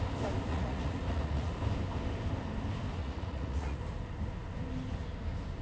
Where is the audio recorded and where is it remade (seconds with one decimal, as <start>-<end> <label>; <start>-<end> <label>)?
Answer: 0.0-0.5 recorded; 0.5-1.5 remade; 1.5-3.0 recorded; 3.0-3.8 remade; 3.8-5.6 recorded